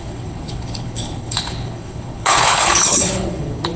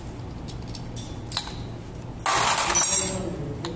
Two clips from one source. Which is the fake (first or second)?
first